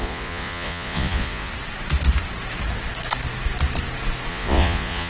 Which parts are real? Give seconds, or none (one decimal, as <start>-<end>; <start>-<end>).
1.5-4.3